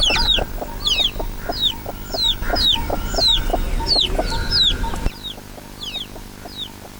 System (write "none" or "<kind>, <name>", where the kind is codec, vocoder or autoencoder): none